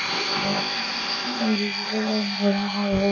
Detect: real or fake fake